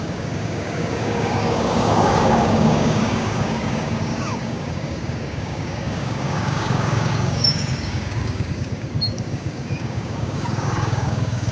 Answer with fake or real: fake